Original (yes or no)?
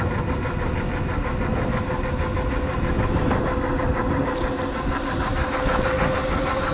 yes